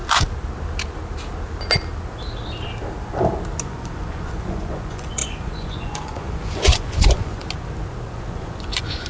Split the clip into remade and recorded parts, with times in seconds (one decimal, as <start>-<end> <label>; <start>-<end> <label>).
0.0-3.6 recorded; 3.6-7.4 remade; 7.4-8.1 recorded; 8.1-9.1 remade